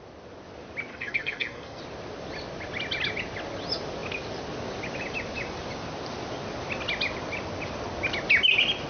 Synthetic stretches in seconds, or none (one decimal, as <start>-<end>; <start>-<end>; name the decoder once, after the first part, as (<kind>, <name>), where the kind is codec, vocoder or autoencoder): 0.9-1.8 (codec, SNAC)